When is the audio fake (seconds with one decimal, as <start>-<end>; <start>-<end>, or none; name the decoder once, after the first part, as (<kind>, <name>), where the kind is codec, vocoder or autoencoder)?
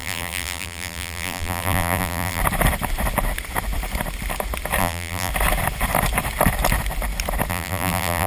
0.0-2.4 (vocoder, BigVGAN v2); 4.8-5.3; 7.5-8.3